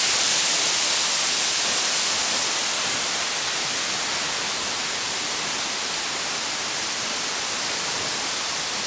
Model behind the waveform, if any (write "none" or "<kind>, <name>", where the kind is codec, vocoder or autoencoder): none